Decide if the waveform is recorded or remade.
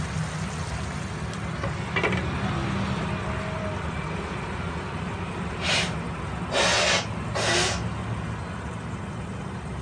recorded